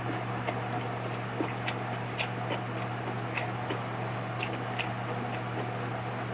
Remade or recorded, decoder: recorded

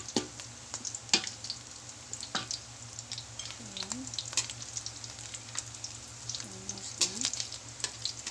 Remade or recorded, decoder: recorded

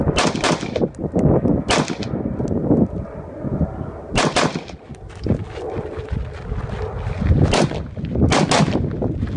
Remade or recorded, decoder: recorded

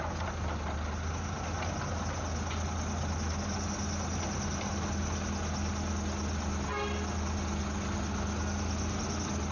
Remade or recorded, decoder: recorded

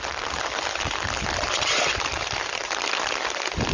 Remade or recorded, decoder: remade, vocoder, BigVGAN v2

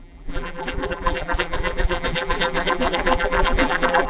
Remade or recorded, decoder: remade, vocoder, BigVGAN v2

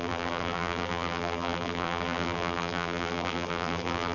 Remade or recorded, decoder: remade, vocoder, BigVGAN v2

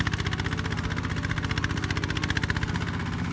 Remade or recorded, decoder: recorded